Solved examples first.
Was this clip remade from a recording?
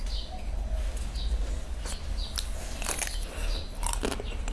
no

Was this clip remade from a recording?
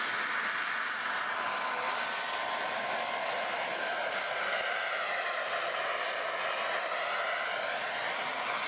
no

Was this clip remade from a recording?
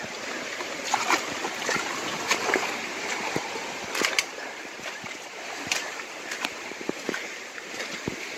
yes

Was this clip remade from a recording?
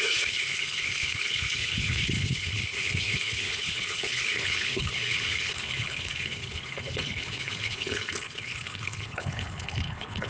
yes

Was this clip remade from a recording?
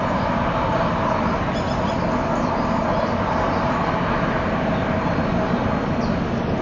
no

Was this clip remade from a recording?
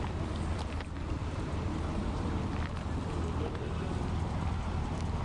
yes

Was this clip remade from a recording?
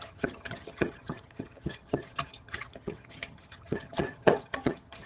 yes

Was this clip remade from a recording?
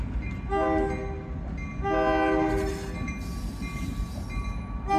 no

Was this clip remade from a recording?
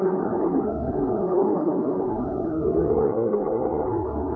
yes